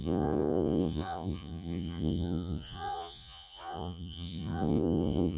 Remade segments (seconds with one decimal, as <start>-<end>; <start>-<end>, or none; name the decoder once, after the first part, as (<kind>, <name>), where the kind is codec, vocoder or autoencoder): 0.0-5.4 (vocoder, Vocos)